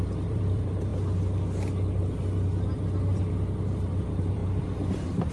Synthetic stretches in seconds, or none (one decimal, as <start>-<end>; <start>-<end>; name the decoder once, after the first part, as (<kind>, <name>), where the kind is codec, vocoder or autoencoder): 0.0-0.9 (vocoder, BigVGAN v2); 3.3-4.4